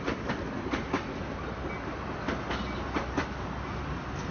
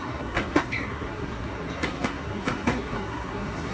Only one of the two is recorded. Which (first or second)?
first